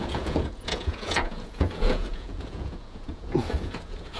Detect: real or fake fake